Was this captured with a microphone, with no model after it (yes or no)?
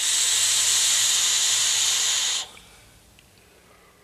yes